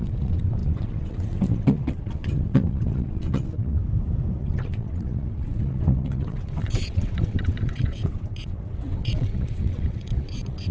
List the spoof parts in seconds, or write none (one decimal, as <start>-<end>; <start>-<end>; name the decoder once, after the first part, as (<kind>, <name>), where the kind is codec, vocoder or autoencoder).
0.0-3.8 (vocoder, WaveNeXt); 4.4-10.7